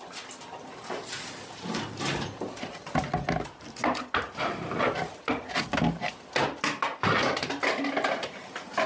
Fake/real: real